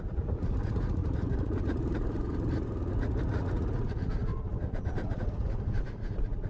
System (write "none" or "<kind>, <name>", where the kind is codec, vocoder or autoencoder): vocoder, Vocos